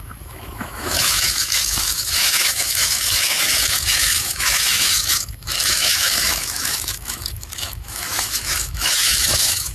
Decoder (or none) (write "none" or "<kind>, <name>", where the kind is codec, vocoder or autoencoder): autoencoder, DAC-VAE